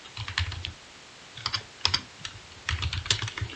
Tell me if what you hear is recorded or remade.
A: recorded